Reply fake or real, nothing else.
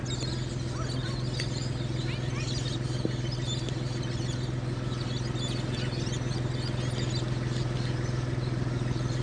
real